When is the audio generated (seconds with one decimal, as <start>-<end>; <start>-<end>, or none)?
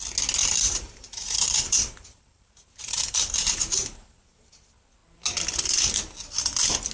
0.4-4.5